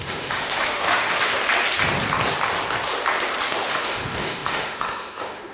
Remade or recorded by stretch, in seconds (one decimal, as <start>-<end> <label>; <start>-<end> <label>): 0.0-1.4 remade; 1.4-3.5 recorded; 3.5-5.5 remade